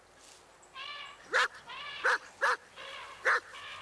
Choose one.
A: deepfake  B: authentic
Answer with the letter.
B